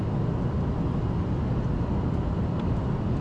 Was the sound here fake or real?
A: real